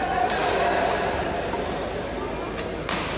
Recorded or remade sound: recorded